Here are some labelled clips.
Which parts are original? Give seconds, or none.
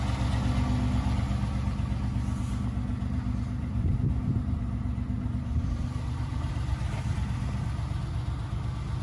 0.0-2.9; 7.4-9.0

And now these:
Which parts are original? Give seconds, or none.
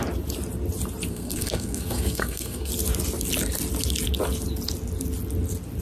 0.0-1.1; 2.7-5.8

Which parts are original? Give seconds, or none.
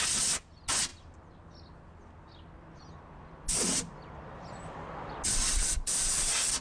0.0-6.6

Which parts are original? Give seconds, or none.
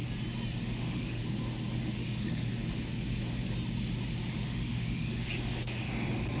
0.0-0.6; 1.2-1.8; 2.5-4.3; 5.3-6.4